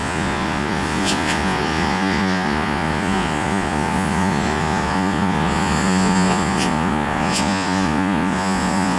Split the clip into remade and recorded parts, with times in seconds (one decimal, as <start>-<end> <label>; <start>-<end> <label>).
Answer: 0.0-9.0 remade